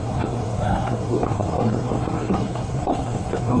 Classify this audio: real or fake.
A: fake